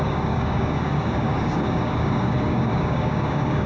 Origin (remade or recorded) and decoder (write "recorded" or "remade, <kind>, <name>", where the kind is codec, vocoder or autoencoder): remade, codec, DAC